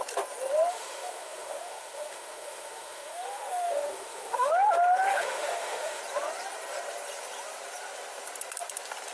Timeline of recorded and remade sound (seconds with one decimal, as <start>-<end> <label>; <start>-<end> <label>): 0.0-0.7 recorded; 0.7-4.5 remade; 4.5-5.1 recorded; 5.1-6.0 remade; 6.0-9.1 recorded